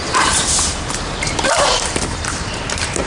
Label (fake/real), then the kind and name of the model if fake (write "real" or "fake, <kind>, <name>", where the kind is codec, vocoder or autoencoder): fake, vocoder, BigVGAN v2